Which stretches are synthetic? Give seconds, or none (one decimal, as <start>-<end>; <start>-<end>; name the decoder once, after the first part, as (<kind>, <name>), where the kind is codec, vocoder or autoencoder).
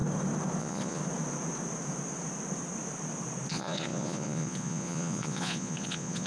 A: 0.6-1.0 (vocoder, Vocos); 3.5-6.3